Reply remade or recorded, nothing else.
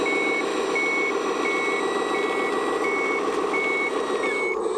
recorded